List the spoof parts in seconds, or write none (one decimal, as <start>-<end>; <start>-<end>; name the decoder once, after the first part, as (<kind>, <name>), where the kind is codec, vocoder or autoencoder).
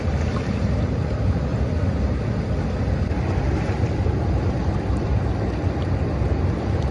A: 0.0-1.5 (vocoder, BigVGAN v2); 2.9-5.1; 6.2-6.9